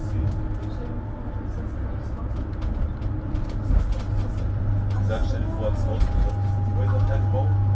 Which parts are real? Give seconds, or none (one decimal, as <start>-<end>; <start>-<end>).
0.0-7.7